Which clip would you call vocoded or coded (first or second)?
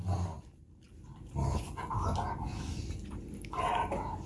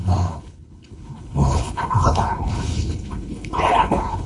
second